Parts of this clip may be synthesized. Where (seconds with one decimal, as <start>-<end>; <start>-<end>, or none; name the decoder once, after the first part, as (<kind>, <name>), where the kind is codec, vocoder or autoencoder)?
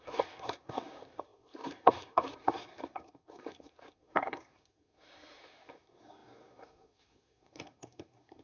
0.0-8.4 (codec, SNAC)